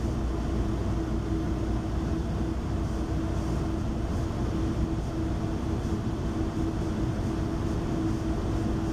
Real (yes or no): yes